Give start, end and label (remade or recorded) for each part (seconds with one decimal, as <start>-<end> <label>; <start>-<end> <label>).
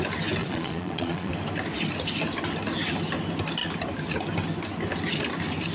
0.0-0.4 recorded; 0.4-1.3 remade; 1.3-5.7 recorded